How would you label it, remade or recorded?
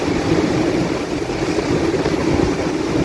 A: recorded